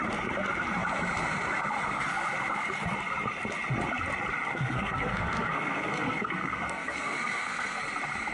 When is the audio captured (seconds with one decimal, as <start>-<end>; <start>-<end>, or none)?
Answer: 0.0-4.5; 7.8-8.3